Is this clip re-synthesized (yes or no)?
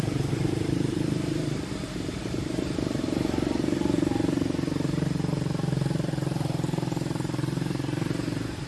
yes